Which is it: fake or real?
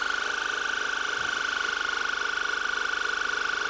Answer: real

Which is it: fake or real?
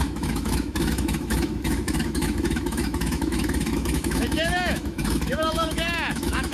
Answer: fake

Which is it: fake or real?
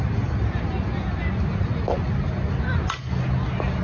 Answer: real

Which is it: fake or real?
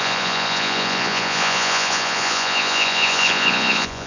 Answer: fake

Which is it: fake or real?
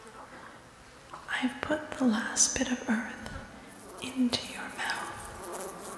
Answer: real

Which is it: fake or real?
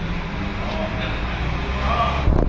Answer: real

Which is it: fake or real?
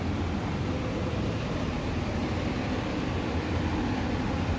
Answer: real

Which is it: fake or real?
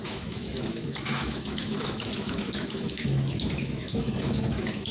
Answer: fake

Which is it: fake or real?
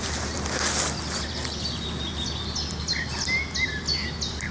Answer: real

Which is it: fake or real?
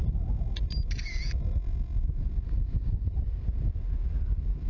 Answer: real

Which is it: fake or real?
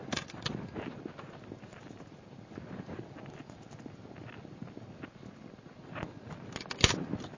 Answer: real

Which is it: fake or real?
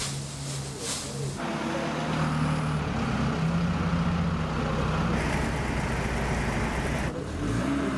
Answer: real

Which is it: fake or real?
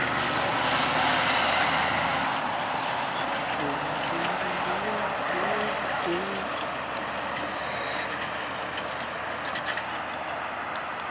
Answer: real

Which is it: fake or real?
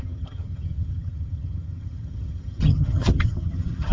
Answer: fake